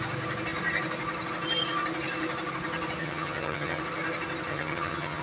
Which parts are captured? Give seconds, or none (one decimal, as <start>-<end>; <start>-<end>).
0.0-3.0; 3.8-4.5